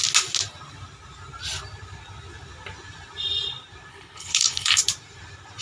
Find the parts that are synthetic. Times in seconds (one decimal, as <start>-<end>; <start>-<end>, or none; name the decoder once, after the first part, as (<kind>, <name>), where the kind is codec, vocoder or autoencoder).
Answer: 3.9-4.8 (codec, HILCodec)

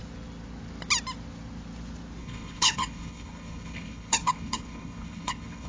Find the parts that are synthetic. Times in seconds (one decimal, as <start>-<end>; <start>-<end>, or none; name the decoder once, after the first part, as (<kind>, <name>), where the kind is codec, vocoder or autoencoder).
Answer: 2.2-5.7 (codec, HILCodec)

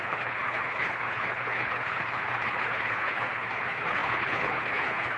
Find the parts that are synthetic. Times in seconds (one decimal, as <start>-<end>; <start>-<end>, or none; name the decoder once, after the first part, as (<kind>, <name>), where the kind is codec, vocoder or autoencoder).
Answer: 0.0-5.2 (codec, HILCodec)

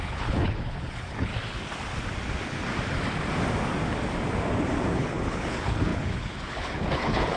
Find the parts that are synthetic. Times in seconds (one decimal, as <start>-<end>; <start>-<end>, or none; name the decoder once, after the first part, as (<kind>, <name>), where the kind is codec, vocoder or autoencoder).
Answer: 0.0-1.3 (codec, HILCodec); 4.9-7.4

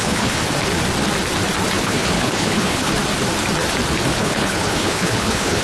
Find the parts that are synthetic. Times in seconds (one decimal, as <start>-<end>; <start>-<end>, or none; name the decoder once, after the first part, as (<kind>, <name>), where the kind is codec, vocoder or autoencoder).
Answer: 0.0-0.4 (codec, HILCodec); 1.8-2.9; 4.1-5.6

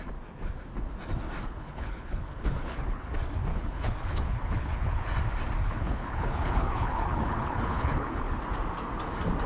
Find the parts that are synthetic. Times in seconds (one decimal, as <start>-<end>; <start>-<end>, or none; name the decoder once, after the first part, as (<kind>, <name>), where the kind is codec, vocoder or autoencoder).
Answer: 1.4-3.1 (codec, HILCodec); 3.5-5.0; 5.6-8.4